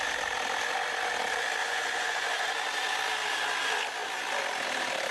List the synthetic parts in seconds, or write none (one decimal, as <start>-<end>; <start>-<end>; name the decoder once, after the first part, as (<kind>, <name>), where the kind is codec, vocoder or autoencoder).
1.6-2.5 (vocoder, Vocos)